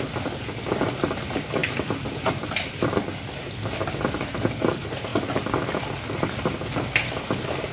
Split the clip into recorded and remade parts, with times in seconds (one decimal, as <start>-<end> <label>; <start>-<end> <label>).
0.0-7.7 recorded